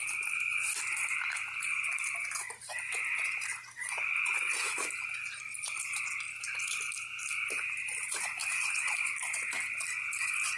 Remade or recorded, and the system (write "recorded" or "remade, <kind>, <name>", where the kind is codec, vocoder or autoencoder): recorded